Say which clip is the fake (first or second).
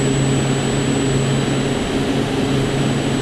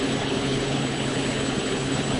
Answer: second